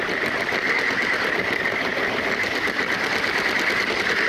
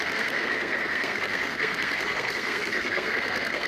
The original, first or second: first